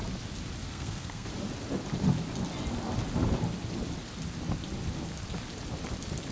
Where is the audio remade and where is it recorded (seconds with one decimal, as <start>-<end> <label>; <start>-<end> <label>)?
0.0-0.6 recorded; 0.6-1.3 remade; 1.3-6.3 recorded